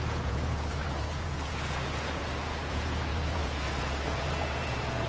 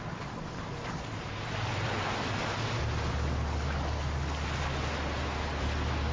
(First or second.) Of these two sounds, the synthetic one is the first